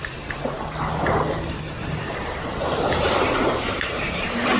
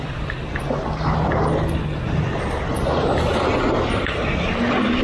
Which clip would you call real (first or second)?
second